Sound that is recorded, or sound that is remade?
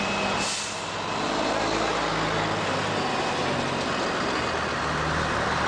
recorded